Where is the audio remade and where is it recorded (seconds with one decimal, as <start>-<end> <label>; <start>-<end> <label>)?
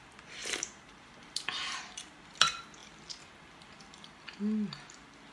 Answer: 0.0-0.4 recorded; 0.4-2.2 remade; 2.2-5.3 recorded